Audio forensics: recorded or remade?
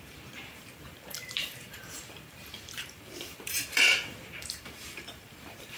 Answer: remade